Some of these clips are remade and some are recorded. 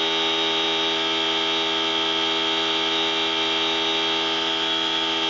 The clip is recorded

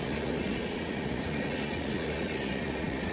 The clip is remade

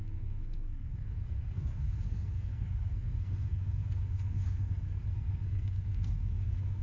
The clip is remade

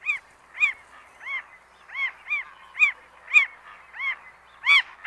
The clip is recorded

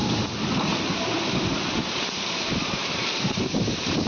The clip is remade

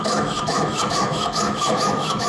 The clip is remade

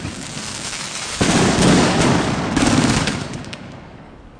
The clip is remade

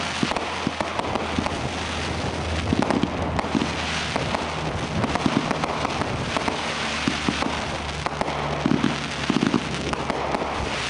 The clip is recorded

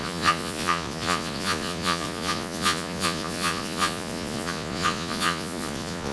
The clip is remade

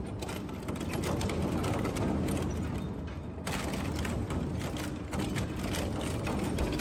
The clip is recorded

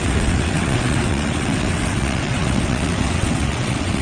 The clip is remade